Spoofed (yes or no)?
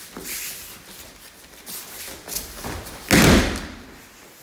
no